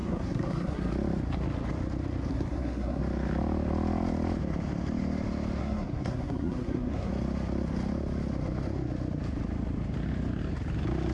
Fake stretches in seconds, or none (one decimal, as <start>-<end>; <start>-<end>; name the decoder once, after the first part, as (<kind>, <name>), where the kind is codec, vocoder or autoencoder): 0.0-0.9 (codec, SNAC); 2.3-3.0; 5.6-7.1